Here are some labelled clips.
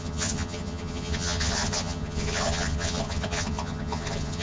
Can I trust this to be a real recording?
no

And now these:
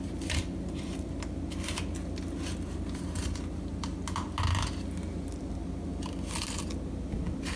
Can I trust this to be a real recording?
yes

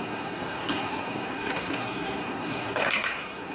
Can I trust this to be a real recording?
no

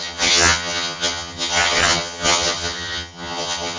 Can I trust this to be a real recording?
no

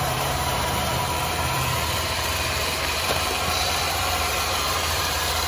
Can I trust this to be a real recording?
no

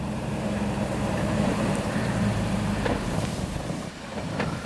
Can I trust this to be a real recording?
no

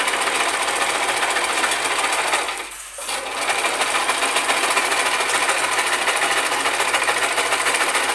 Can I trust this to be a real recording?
yes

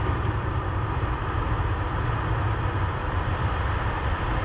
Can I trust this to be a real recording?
no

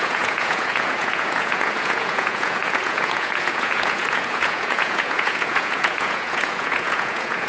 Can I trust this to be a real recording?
no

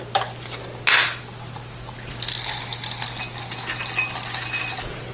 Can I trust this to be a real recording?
yes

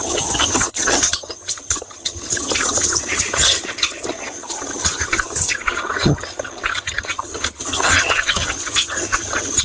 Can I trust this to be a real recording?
no